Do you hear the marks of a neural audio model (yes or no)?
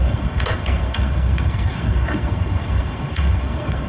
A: yes